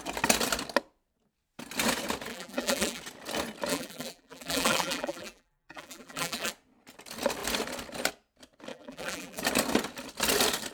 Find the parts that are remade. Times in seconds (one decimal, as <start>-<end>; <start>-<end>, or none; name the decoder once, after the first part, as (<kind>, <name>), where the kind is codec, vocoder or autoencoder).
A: 2.3-3.0 (vocoder, BigVGAN v2); 3.7-6.5; 8.7-9.4